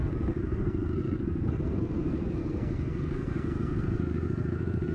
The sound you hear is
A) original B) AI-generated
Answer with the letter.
B